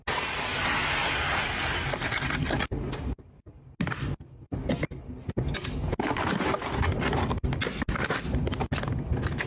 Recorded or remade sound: recorded